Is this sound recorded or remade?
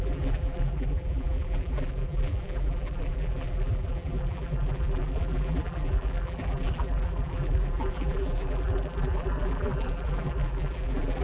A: remade